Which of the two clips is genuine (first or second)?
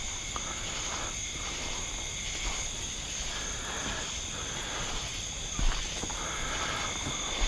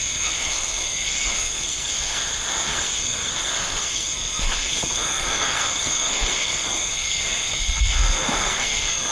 first